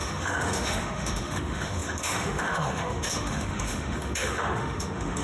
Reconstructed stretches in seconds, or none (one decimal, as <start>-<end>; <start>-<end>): 0.0-5.2